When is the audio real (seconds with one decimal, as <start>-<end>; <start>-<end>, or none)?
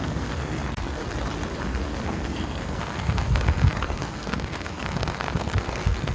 1.0-1.6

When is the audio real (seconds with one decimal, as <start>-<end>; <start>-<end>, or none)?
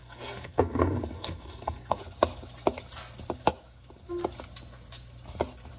2.0-5.8